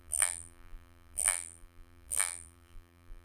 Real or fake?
fake